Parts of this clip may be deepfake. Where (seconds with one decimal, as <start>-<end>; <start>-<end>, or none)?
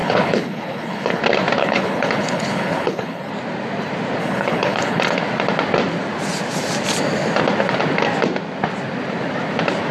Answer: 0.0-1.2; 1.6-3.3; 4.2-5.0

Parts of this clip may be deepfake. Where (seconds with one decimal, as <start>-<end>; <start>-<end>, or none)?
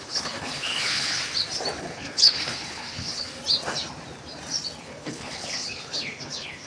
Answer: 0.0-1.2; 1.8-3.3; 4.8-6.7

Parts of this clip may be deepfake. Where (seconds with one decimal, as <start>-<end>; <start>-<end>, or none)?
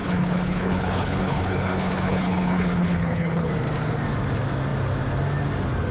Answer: 0.0-3.5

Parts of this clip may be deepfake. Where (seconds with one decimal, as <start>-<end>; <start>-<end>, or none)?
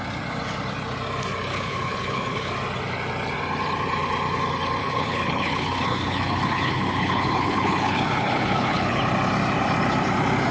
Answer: 1.5-2.5; 4.8-9.0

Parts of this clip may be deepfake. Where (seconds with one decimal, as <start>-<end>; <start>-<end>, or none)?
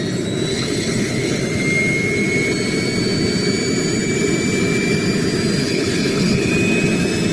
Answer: 0.5-1.4; 5.6-6.5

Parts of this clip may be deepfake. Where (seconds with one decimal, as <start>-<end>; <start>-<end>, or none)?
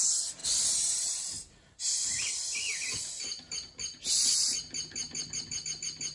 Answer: none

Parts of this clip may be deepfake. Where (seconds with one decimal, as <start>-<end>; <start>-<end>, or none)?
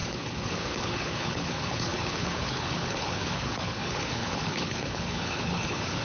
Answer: 0.0-6.0